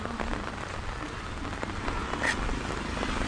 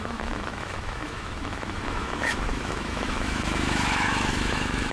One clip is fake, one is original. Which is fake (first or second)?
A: second